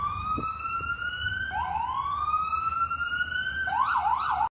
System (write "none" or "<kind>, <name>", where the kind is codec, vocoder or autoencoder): none